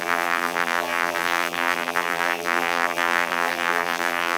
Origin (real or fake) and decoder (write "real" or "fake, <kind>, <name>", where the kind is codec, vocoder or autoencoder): fake, vocoder, BigVGAN v2